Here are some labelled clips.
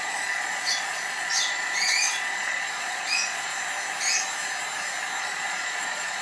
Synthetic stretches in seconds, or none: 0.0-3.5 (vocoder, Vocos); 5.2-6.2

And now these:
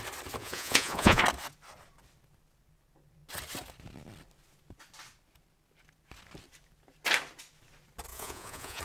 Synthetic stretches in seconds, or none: 0.4-1.2 (vocoder, Vocos); 8.1-8.8

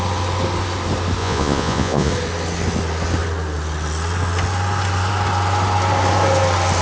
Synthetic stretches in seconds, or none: 1.2-2.1 (vocoder, Vocos)

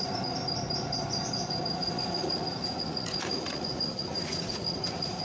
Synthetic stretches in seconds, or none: 1.8-5.2 (vocoder, Vocos)

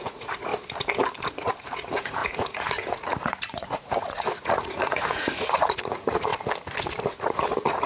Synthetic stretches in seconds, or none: 0.0-0.5 (vocoder, Vocos); 1.3-6.3; 7.2-7.9

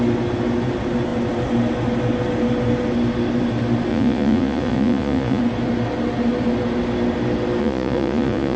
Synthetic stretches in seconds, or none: 3.9-5.4 (vocoder, Vocos); 7.6-8.6